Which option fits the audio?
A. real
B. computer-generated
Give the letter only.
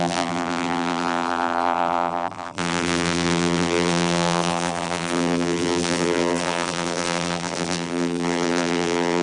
B